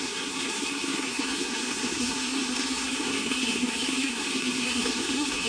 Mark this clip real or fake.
fake